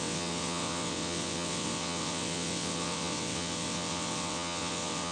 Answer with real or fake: fake